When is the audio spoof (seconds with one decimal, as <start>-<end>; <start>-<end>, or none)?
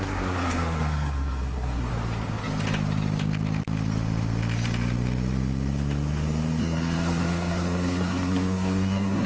0.0-1.9; 6.6-9.3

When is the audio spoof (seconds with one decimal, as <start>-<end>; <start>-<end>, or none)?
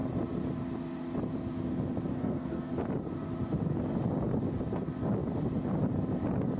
2.1-2.7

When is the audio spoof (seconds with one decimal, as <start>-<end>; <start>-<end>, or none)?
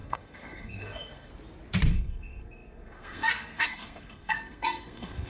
0.0-1.3; 1.9-5.3